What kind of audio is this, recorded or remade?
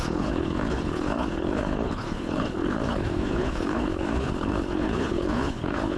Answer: remade